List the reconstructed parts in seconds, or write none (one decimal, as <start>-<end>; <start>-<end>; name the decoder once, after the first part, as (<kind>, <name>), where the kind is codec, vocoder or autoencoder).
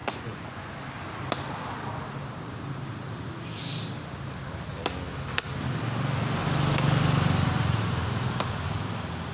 0.0-0.7 (vocoder, Vocos)